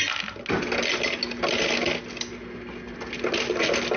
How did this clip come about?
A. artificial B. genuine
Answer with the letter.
B